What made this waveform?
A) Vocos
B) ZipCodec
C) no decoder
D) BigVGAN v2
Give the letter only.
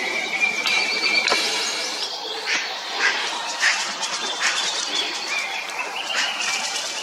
D